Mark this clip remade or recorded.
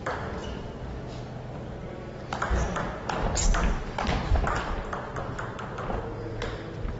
recorded